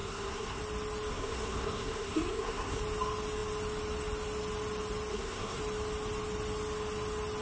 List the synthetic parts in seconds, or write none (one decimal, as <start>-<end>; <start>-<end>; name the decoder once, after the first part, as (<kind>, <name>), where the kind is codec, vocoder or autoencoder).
0.0-0.6 (codec, SNAC); 1.1-2.8; 5.1-5.6